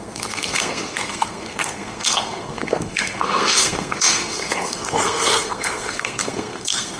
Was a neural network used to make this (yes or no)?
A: yes